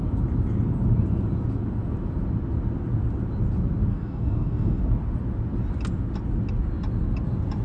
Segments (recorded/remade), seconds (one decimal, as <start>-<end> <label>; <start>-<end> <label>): 0.0-3.9 recorded; 3.9-4.8 remade; 4.8-7.6 recorded